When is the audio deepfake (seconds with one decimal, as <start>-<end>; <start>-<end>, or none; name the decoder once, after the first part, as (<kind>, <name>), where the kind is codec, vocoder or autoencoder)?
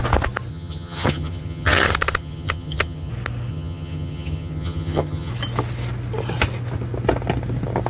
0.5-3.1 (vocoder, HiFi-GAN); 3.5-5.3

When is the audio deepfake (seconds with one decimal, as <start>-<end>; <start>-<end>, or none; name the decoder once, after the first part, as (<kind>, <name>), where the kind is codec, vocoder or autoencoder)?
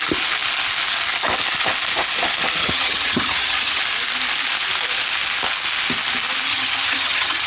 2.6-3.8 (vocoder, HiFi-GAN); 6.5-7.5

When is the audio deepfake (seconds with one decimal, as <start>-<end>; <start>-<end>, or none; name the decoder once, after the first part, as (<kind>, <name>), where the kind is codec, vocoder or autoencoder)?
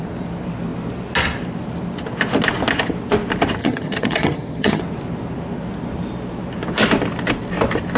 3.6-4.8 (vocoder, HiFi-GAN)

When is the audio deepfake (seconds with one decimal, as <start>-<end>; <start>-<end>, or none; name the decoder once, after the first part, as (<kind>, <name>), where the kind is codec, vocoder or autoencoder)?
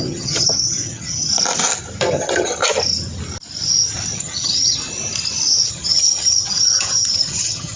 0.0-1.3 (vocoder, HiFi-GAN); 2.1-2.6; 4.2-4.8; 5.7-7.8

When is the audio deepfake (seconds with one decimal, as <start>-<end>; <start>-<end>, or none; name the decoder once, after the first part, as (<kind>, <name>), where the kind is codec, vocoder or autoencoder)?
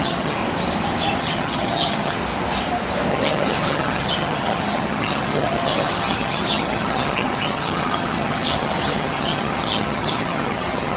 0.0-0.4 (vocoder, HiFi-GAN); 1.2-2.2; 3.1-11.0